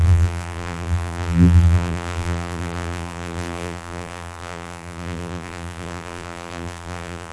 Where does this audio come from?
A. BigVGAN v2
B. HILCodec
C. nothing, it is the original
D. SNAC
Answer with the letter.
A